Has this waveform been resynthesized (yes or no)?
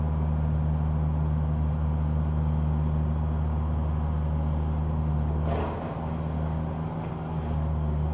no